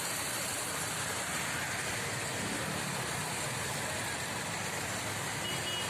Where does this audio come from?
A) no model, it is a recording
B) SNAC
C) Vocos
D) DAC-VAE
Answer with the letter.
A